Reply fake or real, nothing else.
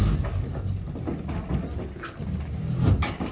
real